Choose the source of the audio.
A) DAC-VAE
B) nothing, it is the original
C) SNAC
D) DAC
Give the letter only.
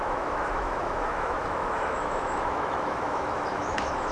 A